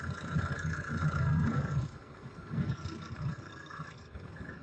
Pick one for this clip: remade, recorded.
remade